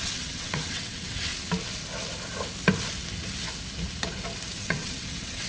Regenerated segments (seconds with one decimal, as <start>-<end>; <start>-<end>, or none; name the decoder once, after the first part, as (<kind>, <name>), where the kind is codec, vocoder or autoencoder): 0.0-1.3 (vocoder, WaveNeXt); 4.6-5.5